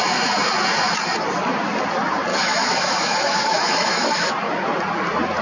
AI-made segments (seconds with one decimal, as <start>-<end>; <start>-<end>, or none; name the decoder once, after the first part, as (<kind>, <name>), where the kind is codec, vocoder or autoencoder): 2.3-4.3 (autoencoder, DAC-VAE)